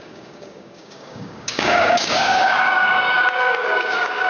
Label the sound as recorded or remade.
remade